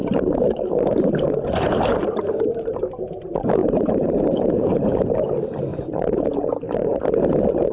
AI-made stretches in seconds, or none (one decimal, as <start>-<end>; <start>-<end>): 0.0-2.2; 3.6-4.9; 5.7-7.0